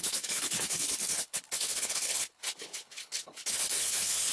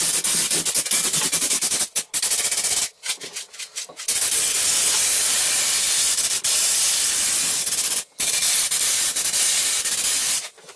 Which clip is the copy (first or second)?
first